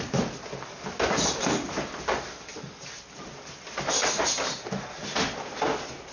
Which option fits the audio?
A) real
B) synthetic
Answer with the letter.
A